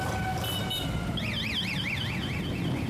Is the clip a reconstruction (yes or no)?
no